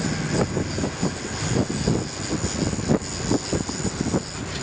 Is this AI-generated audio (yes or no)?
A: no